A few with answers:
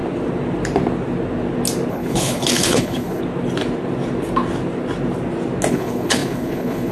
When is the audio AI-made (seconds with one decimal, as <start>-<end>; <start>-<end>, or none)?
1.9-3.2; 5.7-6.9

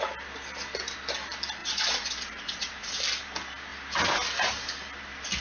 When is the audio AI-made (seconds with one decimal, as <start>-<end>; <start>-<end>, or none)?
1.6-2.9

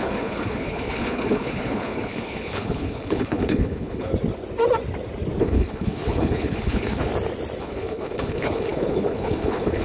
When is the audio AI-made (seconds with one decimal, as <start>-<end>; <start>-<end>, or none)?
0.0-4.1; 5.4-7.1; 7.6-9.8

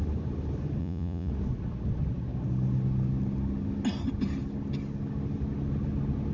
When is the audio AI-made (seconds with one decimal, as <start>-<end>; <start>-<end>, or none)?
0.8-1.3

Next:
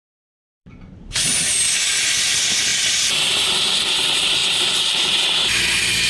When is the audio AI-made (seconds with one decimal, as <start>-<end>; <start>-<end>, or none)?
0.6-1.5; 2.7-3.7; 4.4-5.1

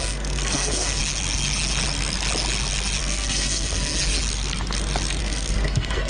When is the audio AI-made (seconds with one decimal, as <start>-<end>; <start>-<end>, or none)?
0.0-1.0; 3.0-4.0; 5.2-6.1